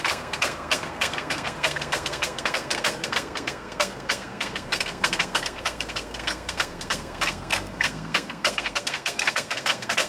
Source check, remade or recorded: remade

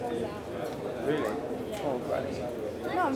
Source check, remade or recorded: recorded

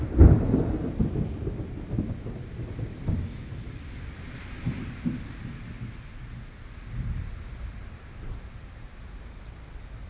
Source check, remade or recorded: recorded